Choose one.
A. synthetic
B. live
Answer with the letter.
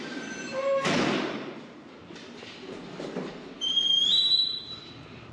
A